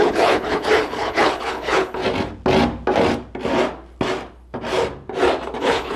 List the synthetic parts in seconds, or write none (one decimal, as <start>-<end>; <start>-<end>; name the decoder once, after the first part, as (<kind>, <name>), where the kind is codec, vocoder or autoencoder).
0.0-2.0 (codec, HILCodec); 5.6-6.0